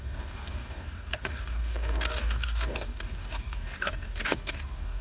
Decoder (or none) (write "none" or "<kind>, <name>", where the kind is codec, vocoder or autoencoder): codec, DAC